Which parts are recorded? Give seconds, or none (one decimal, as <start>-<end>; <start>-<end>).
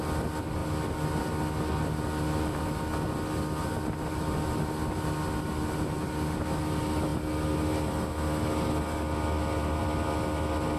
0.0-10.8